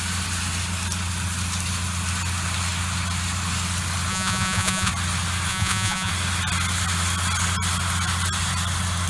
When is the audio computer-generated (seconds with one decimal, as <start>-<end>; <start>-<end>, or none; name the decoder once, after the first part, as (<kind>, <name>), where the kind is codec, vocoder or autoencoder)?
4.1-4.9 (vocoder, Vocos); 5.5-6.1